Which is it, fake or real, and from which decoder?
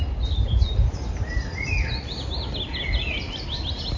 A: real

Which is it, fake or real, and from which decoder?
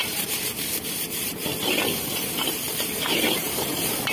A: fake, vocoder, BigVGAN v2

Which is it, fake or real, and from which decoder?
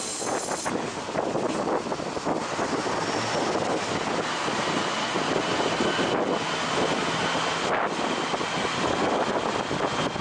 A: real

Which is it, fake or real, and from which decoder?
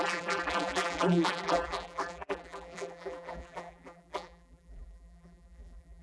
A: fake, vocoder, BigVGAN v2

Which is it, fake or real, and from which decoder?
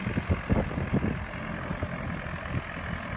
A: real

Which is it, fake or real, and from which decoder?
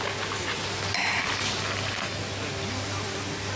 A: real